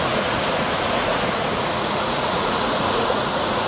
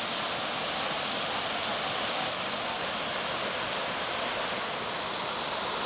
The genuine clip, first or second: second